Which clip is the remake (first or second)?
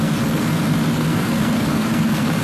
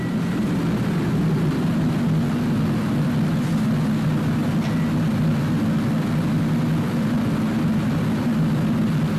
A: first